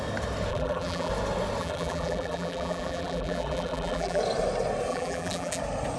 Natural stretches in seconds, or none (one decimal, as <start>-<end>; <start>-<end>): 0.0-0.5; 1.1-1.6; 4.2-4.9; 5.6-6.0